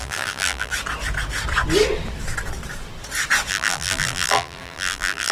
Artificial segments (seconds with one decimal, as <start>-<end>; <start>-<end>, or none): 0.0-0.7; 3.5-5.3